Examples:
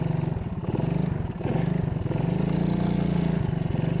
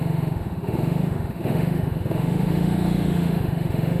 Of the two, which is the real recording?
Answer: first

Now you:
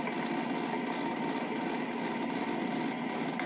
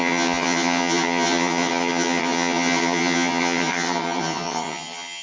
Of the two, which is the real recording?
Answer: first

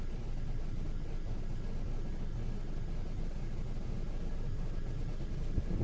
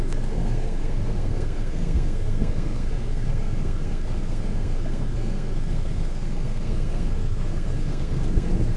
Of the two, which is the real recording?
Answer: first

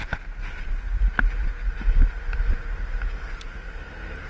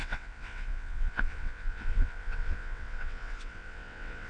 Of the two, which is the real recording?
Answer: first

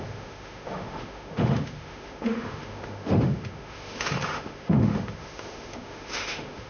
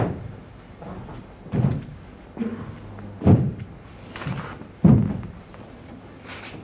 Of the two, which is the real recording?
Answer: second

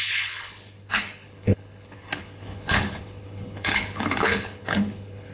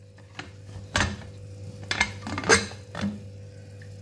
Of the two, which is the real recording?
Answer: second